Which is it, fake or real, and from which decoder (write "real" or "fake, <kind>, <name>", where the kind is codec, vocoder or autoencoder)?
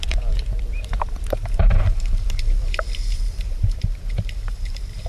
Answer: fake, vocoder, BigVGAN v2